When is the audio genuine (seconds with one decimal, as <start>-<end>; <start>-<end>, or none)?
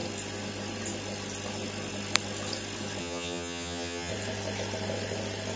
0.0-3.0; 4.1-5.6